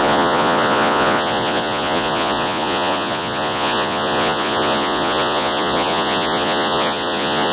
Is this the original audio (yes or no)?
no